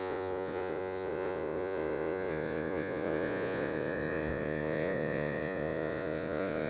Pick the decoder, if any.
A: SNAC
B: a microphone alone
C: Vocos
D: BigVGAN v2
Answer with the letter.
C